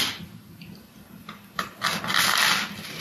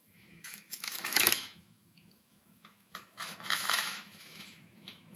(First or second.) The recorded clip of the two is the first